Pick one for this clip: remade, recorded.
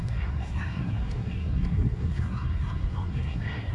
remade